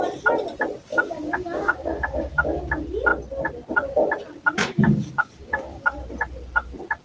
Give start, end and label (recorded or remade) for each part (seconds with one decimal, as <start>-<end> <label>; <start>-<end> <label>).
0.0-0.9 recorded; 0.9-2.6 remade; 2.6-4.6 recorded; 4.6-5.8 remade; 5.8-7.0 recorded